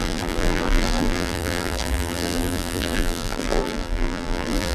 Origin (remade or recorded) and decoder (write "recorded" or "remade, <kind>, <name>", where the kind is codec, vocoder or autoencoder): remade, vocoder, BigVGAN v2